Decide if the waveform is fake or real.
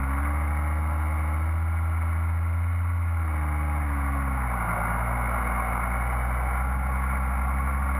real